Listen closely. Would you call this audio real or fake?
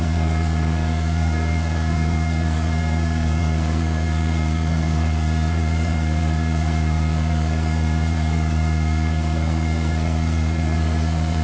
fake